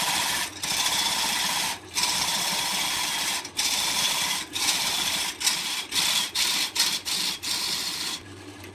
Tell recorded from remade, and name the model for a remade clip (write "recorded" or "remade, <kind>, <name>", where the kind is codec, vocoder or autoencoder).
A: recorded